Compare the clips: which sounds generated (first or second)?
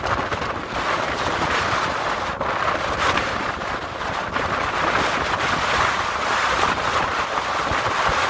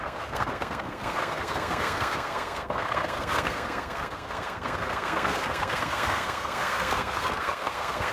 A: second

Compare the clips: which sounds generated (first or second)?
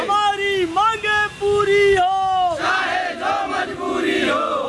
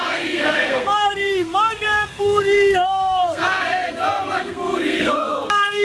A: second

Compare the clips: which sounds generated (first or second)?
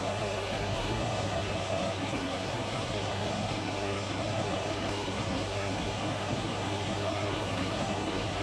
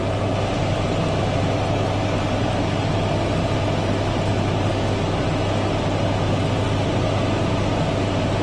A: first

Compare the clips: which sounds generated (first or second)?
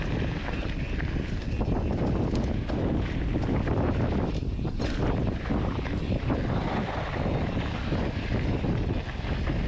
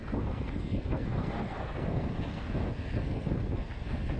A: second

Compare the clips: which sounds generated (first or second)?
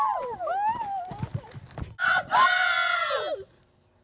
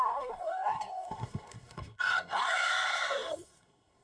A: second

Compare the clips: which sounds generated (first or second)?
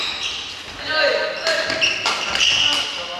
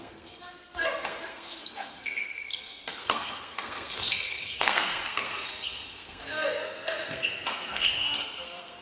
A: second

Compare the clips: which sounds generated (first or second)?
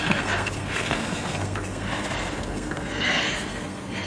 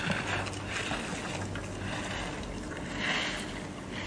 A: first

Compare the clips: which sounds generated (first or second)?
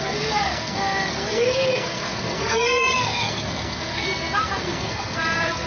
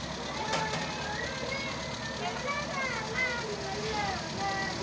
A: first